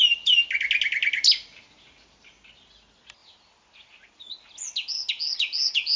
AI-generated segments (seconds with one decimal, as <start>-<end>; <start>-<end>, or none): none